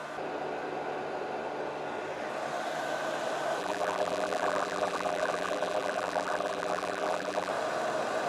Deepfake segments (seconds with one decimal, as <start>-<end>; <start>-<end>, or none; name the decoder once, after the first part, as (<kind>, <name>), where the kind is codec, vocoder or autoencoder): 3.6-7.5 (vocoder, BigVGAN v2)